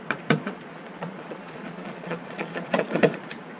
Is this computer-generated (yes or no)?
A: yes